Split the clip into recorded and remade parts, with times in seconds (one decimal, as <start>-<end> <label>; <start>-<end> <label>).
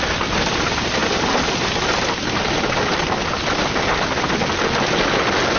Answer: 0.0-5.6 recorded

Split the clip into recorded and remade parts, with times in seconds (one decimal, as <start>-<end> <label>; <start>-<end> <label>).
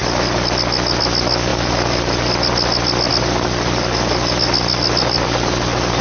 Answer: 0.0-6.0 recorded